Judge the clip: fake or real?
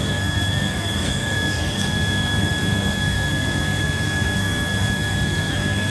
fake